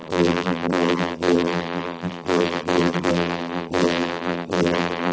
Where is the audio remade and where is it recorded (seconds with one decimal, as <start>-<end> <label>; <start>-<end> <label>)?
0.0-5.1 remade